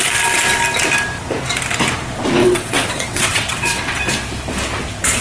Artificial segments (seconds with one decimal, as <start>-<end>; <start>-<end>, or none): 2.4-4.0

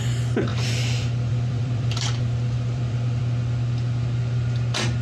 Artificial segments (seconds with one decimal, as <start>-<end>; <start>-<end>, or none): 0.5-3.2

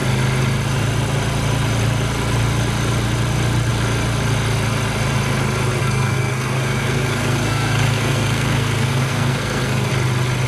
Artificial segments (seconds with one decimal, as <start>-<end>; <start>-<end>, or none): 5.8-9.9

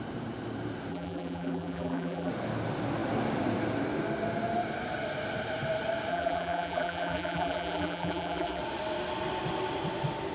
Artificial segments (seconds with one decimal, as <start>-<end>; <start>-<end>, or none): 0.9-2.3; 6.1-8.6

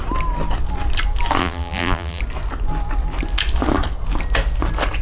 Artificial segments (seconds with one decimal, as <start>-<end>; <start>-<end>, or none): 1.4-2.2

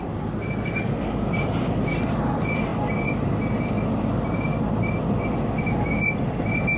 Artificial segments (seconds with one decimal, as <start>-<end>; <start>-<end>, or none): none

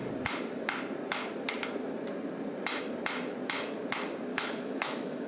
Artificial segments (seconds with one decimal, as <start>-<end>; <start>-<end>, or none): 4.3-5.3